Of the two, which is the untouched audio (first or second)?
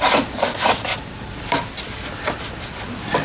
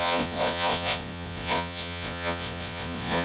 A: first